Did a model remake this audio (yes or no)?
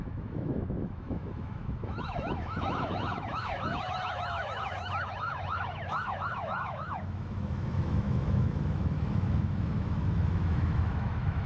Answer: yes